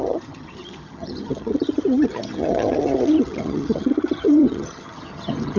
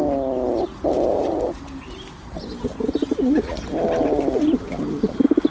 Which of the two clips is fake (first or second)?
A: first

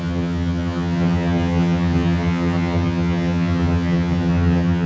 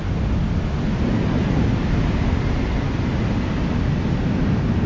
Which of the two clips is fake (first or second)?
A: first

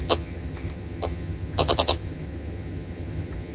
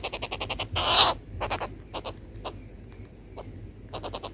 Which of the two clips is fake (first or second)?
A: first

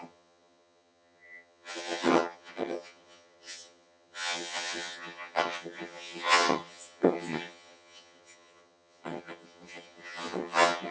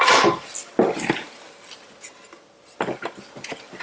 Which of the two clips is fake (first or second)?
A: first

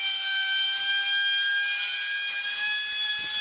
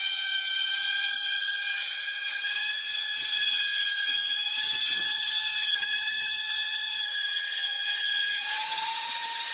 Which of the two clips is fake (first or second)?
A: second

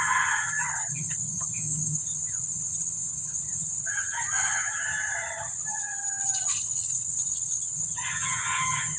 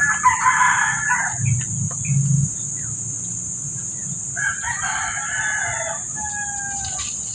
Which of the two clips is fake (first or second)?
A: first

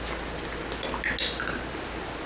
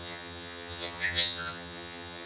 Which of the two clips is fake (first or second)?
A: second